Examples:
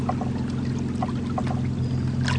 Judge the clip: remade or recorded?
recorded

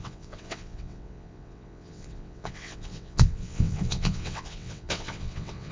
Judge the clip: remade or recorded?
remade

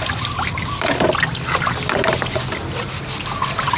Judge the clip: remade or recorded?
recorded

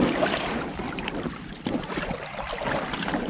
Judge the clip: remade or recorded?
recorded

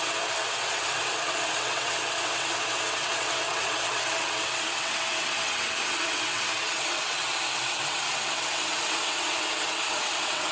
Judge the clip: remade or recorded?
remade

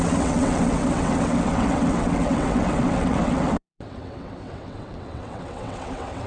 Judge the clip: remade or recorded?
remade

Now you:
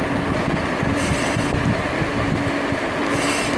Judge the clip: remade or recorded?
recorded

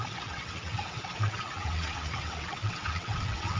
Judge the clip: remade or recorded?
remade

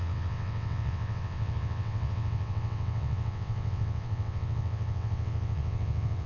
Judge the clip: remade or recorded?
remade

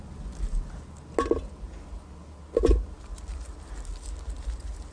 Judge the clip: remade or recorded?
recorded